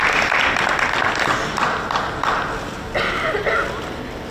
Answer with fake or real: real